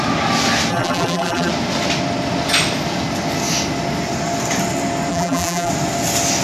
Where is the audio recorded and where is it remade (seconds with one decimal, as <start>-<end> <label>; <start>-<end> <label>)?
0.0-0.7 recorded; 0.7-1.5 remade; 1.5-5.1 recorded; 5.1-5.7 remade; 5.7-6.4 recorded

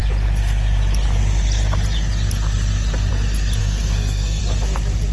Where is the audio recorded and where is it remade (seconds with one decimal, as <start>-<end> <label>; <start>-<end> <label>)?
0.0-3.6 recorded; 3.6-4.4 remade; 4.4-5.1 recorded